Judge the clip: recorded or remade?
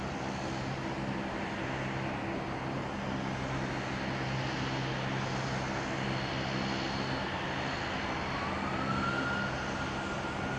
recorded